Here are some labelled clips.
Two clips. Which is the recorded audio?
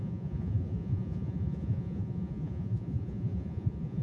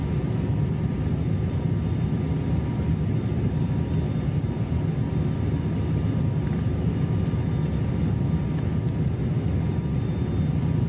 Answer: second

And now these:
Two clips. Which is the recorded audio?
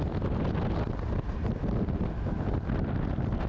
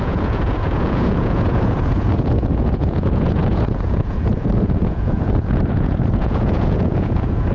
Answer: first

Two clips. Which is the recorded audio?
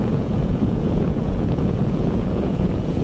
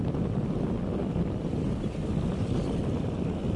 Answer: second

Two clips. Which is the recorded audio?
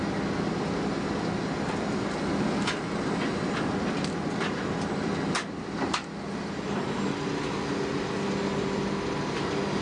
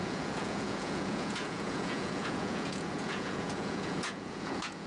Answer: first